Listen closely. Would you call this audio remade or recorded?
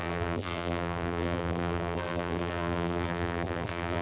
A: remade